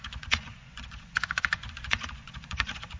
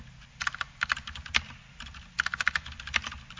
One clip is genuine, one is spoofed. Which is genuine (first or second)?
second